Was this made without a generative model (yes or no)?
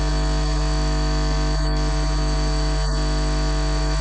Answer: no